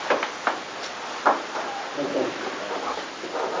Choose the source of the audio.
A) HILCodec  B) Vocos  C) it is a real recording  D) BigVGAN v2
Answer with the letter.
C